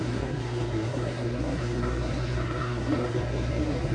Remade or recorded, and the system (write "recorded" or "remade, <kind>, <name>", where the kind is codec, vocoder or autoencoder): remade, codec, SNAC